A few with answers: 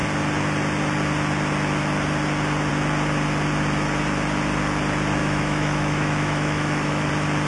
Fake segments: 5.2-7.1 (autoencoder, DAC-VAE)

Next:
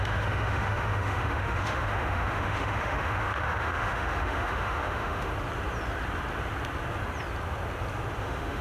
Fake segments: 0.0-5.3 (autoencoder, DAC-VAE); 8.2-8.6

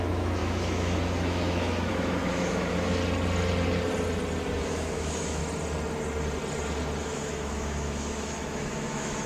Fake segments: 0.0-3.0 (autoencoder, DAC-VAE); 4.6-5.4; 7.0-9.3

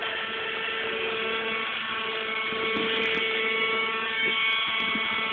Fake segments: 3.2-4.4 (autoencoder, DAC-VAE)

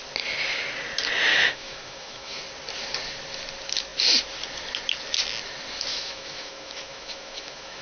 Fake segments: 1.3-2.4 (autoencoder, DAC-VAE); 5.9-7.8

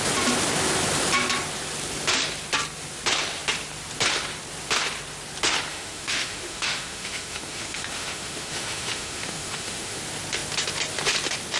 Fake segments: 5.7-10.0 (autoencoder, DAC-VAE)

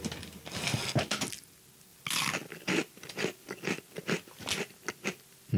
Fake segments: none